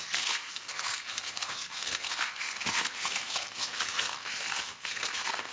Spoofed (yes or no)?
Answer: yes